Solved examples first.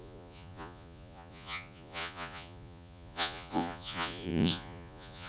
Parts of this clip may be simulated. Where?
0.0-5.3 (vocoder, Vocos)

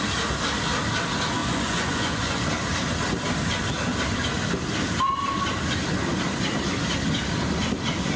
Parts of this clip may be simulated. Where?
1.4-2.4 (vocoder, Vocos)

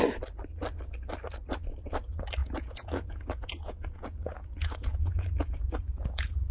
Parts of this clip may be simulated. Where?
2.4-6.5 (vocoder, Vocos)

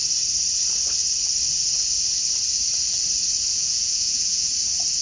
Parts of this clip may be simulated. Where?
3.5-4.5 (vocoder, Vocos)

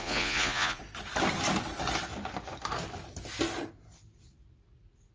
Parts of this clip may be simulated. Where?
0.0-0.8 (vocoder, Vocos)